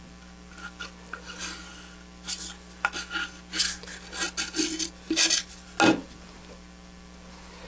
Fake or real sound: real